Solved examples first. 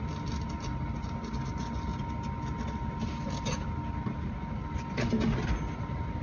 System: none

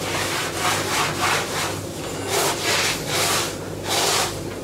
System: none